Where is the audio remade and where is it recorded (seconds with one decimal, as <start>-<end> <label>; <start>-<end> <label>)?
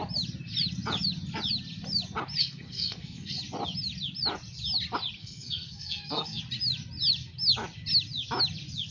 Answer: 0.0-2.4 recorded; 2.4-3.4 remade; 3.4-5.2 recorded; 5.2-6.4 remade; 6.4-8.9 recorded